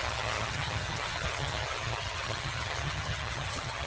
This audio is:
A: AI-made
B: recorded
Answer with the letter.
A